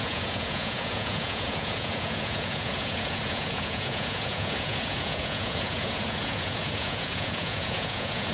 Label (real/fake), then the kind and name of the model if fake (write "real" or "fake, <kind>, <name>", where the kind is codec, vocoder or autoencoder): fake, vocoder, Vocos